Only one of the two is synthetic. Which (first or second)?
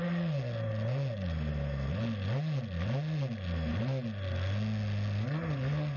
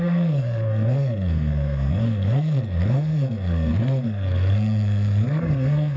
second